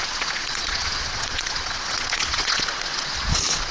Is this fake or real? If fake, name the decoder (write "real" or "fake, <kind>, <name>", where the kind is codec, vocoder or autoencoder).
fake, vocoder, Vocos